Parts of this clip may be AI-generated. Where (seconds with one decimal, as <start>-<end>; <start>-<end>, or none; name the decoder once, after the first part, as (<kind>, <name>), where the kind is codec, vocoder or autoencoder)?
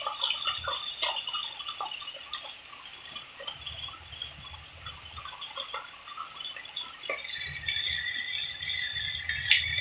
none